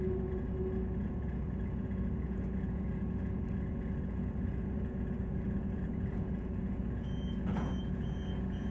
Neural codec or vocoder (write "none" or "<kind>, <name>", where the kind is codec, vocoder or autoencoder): vocoder, Vocos